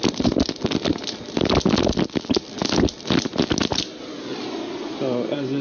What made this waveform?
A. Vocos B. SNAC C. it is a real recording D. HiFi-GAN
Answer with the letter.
C